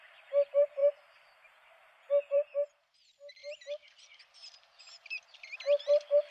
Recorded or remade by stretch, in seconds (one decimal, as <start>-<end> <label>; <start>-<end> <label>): 0.0-3.4 remade; 3.4-4.8 recorded; 4.8-6.3 remade